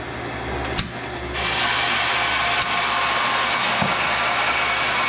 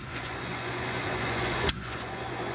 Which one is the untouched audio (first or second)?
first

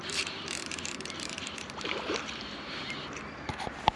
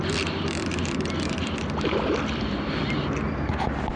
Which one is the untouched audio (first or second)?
second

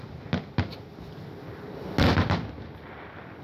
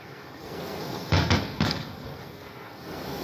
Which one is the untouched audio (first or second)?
first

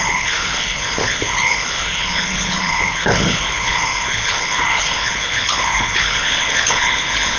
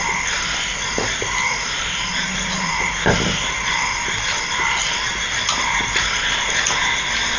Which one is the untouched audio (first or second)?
second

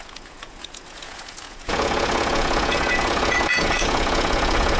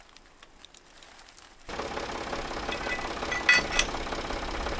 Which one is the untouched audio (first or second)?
second